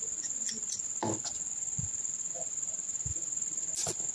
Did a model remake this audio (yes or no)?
no